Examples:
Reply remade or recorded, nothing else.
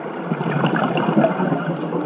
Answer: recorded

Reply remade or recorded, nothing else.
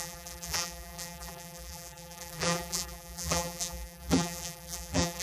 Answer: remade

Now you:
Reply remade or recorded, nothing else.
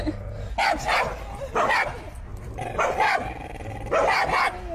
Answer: recorded